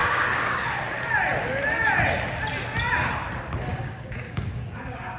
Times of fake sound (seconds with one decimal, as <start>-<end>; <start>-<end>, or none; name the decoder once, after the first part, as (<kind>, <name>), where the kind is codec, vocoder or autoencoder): 0.0-0.8 (codec, DAC); 3.7-5.2